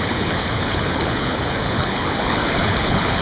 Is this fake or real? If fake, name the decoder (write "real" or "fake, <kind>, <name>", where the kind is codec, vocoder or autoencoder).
fake, codec, HILCodec